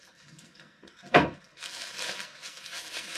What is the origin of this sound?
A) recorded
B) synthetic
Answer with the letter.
B